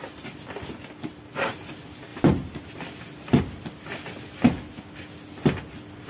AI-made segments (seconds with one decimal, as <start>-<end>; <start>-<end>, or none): none